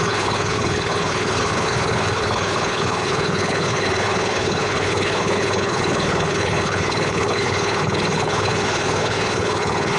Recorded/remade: remade